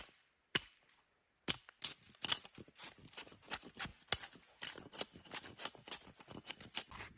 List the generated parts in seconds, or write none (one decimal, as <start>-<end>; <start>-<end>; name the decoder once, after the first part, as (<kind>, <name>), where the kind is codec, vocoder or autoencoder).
none